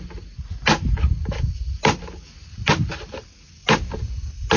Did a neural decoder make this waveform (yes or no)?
no